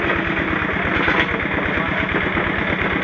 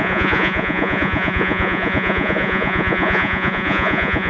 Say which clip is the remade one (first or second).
second